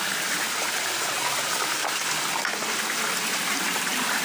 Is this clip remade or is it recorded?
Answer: recorded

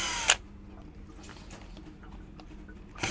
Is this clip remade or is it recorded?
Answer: recorded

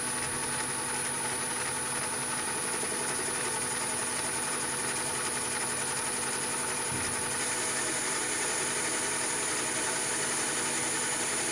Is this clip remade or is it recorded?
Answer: recorded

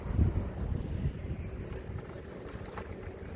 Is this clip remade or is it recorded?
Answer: recorded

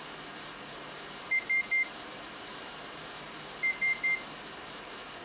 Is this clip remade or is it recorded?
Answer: remade